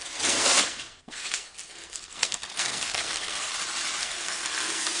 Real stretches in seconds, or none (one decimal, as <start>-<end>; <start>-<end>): 3.5-4.0